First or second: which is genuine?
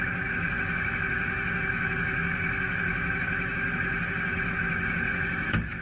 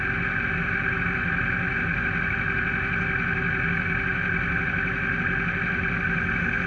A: second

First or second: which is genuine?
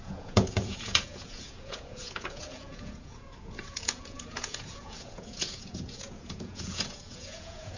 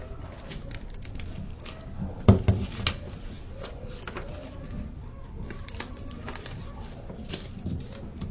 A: second